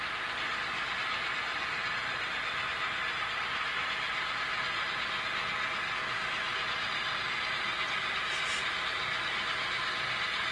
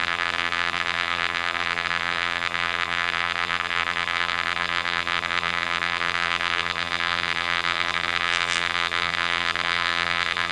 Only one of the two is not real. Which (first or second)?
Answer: second